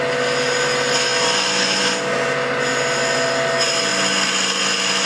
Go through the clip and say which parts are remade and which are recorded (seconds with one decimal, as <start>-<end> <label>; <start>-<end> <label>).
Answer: 0.0-5.1 recorded